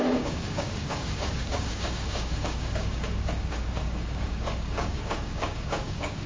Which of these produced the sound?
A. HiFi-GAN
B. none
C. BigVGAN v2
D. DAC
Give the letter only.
D